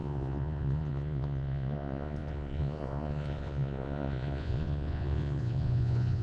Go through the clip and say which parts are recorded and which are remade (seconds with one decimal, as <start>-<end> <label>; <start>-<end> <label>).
0.0-6.2 remade